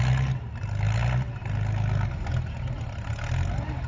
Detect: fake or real real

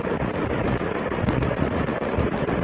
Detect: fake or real fake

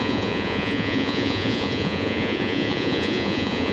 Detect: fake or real fake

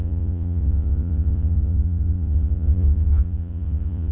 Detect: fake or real fake